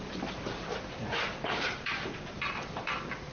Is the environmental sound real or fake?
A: fake